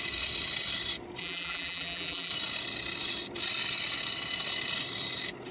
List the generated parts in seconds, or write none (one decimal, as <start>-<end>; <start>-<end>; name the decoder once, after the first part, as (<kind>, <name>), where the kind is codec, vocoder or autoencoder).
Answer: 1.2-2.3 (vocoder, BigVGAN v2)